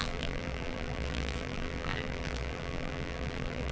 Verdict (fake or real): fake